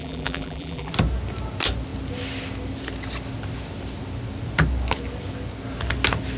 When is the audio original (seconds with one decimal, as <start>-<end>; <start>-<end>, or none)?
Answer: 0.9-6.4